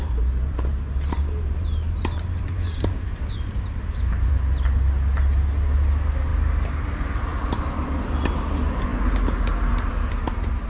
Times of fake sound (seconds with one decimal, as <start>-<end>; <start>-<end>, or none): 0.0-4.3